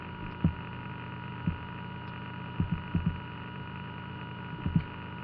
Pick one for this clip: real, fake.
real